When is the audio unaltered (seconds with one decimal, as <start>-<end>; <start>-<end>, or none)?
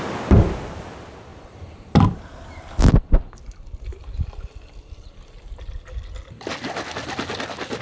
0.0-1.3; 2.8-7.8